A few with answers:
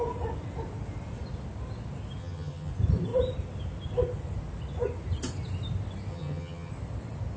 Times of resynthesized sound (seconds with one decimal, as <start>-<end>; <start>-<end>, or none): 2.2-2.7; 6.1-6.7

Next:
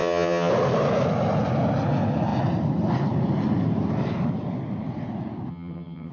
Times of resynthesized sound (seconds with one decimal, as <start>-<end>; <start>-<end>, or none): 0.0-0.5; 5.5-6.1

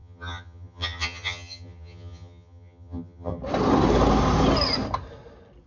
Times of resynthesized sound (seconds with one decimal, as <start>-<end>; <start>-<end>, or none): 0.0-3.4